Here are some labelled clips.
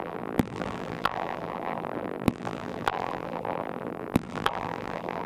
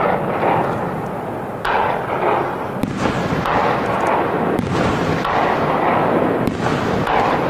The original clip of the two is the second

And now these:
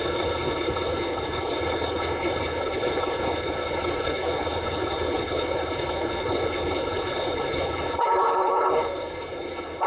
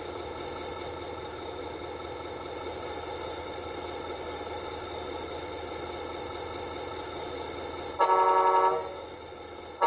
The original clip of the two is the second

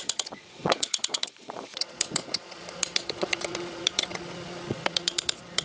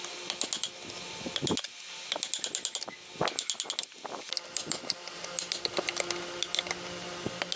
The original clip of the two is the second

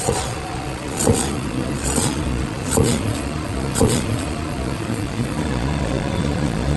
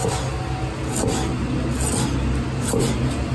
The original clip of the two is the second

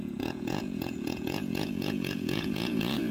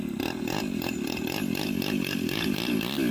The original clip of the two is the second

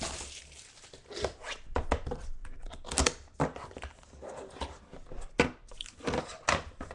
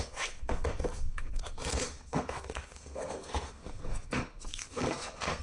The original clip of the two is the first